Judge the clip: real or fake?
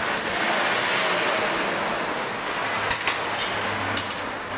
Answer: real